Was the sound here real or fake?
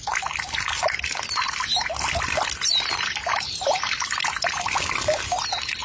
real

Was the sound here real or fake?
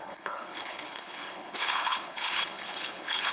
fake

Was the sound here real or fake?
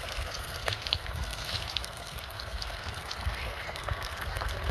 fake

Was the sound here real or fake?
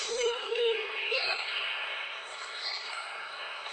fake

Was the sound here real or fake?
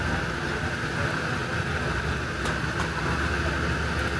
real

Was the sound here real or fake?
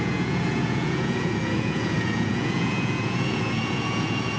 fake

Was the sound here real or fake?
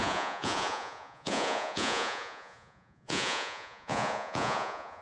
fake